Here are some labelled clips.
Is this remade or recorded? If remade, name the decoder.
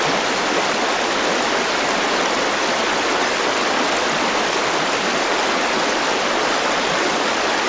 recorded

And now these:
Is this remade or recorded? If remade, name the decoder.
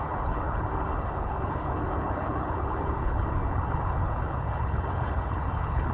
remade, codec, HILCodec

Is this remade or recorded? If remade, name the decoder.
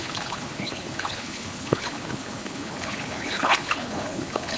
remade, codec, HILCodec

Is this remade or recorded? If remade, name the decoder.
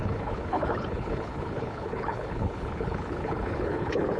remade, codec, HILCodec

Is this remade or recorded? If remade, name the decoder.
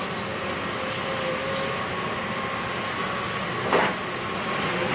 recorded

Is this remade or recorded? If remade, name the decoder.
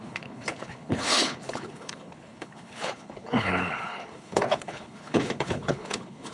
remade, codec, HILCodec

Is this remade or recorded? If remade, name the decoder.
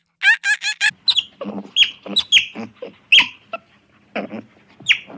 recorded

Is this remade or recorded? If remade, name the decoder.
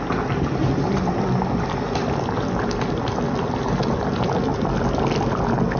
recorded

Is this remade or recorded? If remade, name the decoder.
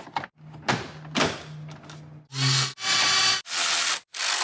recorded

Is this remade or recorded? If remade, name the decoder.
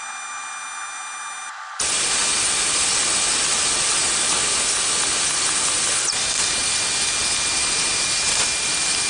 recorded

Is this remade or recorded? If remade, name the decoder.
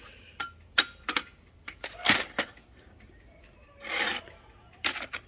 recorded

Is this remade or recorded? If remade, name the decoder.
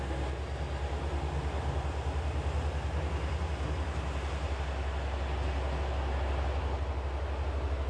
recorded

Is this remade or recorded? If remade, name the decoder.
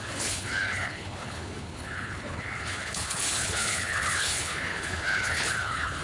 remade, codec, HILCodec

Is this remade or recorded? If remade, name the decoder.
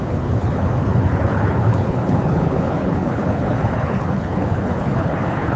remade, codec, HILCodec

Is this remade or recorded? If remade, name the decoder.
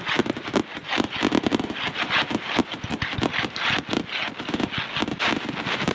recorded